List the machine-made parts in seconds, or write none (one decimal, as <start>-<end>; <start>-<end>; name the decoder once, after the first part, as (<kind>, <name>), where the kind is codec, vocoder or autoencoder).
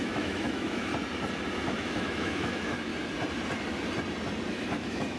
0.0-0.9 (autoencoder, DAC-VAE); 1.6-2.9; 4.5-5.2